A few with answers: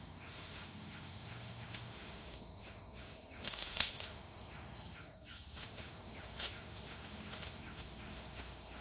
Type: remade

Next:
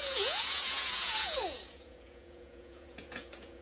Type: remade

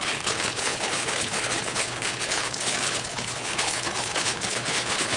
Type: remade